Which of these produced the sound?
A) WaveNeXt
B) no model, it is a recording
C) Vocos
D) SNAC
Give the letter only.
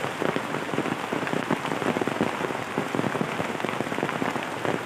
B